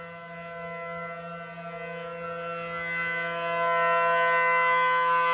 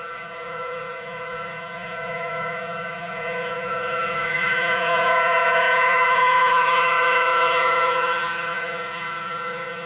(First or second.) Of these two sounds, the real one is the first